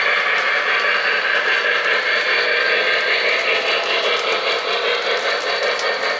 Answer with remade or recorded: recorded